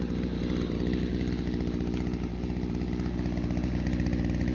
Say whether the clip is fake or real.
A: real